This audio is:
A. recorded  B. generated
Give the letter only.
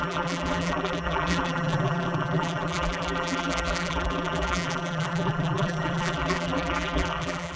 B